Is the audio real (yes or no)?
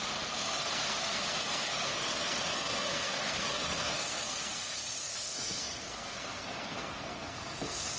no